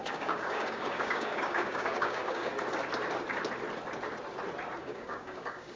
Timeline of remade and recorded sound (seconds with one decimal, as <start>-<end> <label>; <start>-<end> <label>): 0.0-2.5 remade; 2.5-4.8 recorded; 4.8-5.8 remade